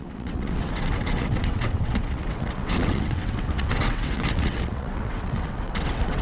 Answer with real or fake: fake